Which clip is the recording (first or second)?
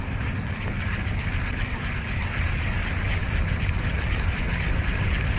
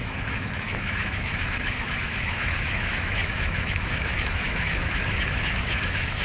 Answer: first